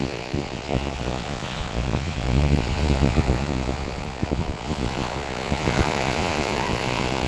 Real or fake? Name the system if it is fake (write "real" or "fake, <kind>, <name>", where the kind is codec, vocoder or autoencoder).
fake, vocoder, Vocos